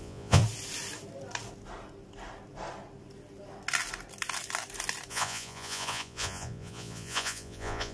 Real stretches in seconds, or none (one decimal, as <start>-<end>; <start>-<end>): 0.4-5.1